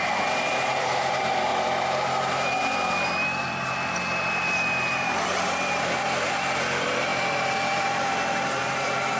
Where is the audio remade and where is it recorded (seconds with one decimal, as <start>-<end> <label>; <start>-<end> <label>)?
0.0-1.5 remade; 1.5-3.4 recorded; 3.4-9.2 remade